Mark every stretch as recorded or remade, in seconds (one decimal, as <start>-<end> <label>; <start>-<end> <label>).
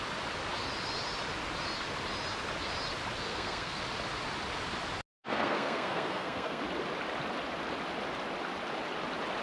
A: 0.0-3.3 recorded; 3.3-3.8 remade; 3.8-5.1 recorded; 5.1-6.6 remade; 6.6-9.4 recorded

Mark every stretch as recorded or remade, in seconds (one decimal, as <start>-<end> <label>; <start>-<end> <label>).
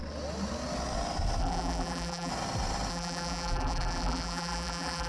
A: 0.0-1.4 recorded; 1.4-2.3 remade; 2.3-2.9 recorded; 2.9-5.1 remade